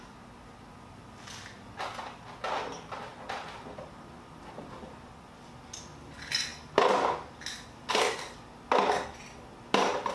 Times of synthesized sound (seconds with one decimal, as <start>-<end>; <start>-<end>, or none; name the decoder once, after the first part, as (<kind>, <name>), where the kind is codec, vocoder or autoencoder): none